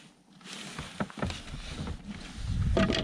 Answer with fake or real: real